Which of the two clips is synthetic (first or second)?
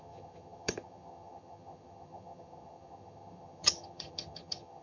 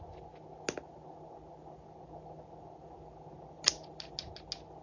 first